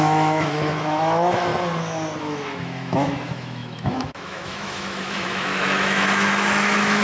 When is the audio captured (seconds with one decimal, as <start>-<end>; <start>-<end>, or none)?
1.5-2.2